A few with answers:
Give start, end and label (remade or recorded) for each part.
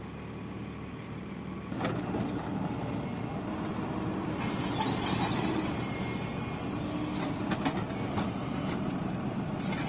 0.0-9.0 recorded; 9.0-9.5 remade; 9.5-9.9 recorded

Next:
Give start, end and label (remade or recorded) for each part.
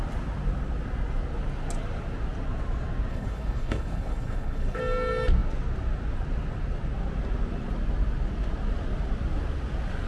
0.0-3.1 recorded; 3.1-4.8 remade; 4.8-10.1 recorded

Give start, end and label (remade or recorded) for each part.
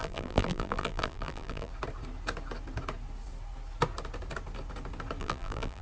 0.0-1.7 remade; 1.7-5.2 recorded; 5.2-5.8 remade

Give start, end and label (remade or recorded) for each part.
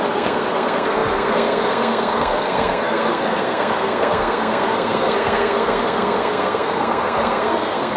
0.0-8.0 remade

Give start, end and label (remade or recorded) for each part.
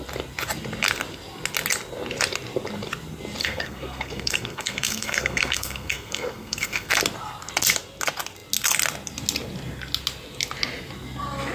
0.0-3.4 recorded; 3.4-6.9 remade; 6.9-11.5 recorded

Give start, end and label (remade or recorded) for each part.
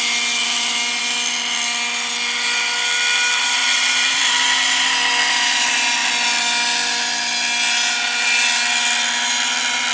0.0-0.4 recorded; 0.4-1.0 remade; 1.0-3.6 recorded; 3.6-4.9 remade; 4.9-9.9 recorded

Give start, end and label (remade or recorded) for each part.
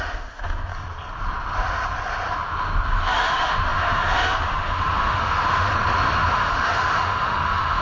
0.0-0.7 remade; 0.7-3.0 recorded; 3.0-5.7 remade; 5.7-6.3 recorded; 6.3-7.8 remade